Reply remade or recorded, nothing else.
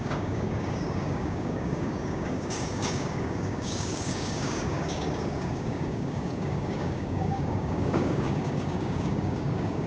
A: remade